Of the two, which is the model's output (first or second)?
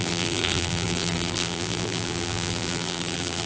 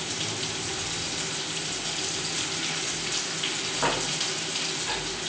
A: first